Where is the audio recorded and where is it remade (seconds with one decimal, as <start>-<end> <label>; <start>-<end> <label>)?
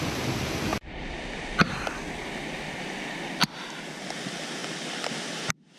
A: 0.0-5.8 recorded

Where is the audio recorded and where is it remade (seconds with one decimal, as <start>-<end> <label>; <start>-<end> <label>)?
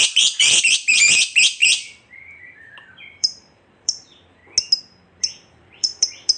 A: 0.0-4.4 remade; 4.4-5.2 recorded; 5.2-6.4 remade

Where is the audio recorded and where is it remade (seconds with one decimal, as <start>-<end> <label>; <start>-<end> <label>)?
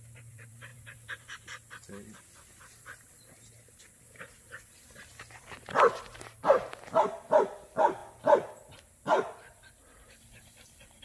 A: 0.0-11.0 remade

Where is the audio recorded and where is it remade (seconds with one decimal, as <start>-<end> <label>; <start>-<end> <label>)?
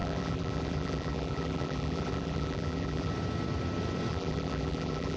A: 0.0-3.1 remade; 3.1-4.1 recorded; 4.1-5.2 remade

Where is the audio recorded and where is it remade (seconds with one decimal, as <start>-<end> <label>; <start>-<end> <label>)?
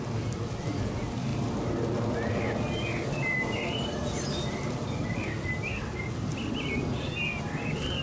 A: 0.0-8.0 recorded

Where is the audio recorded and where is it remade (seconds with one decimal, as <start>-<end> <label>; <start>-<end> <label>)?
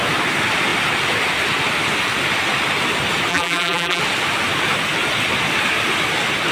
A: 0.0-3.3 recorded; 3.3-4.0 remade; 4.0-6.5 recorded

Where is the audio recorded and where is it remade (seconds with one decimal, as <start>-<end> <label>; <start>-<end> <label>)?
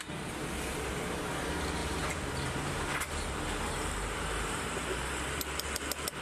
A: 0.0-1.8 recorded; 1.8-5.4 remade; 5.4-6.2 recorded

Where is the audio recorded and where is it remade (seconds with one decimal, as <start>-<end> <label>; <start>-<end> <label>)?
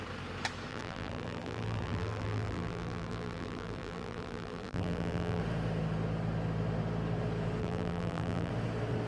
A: 0.0-0.7 recorded; 0.7-5.4 remade; 5.4-7.6 recorded; 7.6-8.5 remade; 8.5-9.1 recorded